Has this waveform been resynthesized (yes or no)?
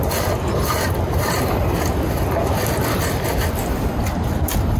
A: no